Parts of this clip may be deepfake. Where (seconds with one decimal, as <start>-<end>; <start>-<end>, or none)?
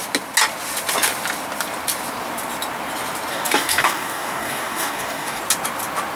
3.3-5.4